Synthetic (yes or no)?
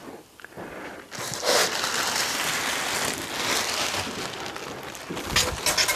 no